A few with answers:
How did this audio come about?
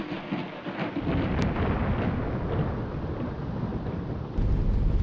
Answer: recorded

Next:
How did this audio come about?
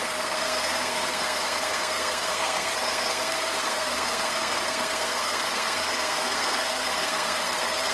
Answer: remade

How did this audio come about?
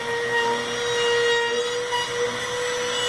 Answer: recorded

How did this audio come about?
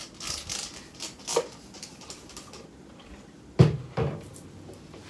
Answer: recorded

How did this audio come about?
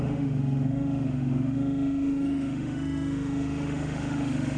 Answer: remade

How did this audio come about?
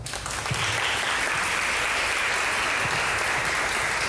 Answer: recorded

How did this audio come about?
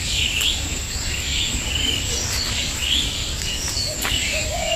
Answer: remade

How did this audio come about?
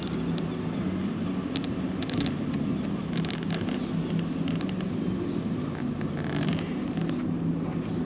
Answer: recorded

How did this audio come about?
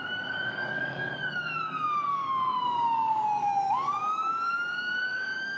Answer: remade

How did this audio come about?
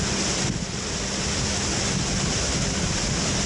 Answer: recorded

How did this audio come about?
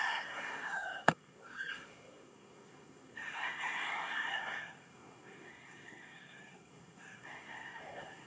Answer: remade